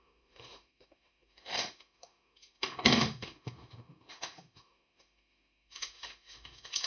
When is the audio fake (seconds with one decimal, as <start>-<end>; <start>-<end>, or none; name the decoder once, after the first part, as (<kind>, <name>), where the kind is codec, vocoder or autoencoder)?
0.0-6.9 (autoencoder, DAC-VAE)

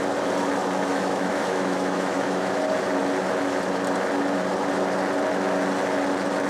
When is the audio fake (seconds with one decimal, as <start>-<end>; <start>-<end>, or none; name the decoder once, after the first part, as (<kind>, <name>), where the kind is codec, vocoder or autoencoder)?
0.9-2.6 (autoencoder, DAC-VAE)